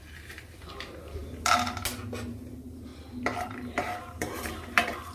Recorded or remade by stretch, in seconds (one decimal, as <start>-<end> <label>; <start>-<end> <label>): 0.0-0.7 recorded; 0.7-1.2 remade; 1.2-2.3 recorded; 2.3-5.1 remade